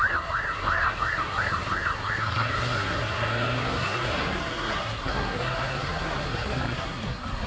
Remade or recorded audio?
remade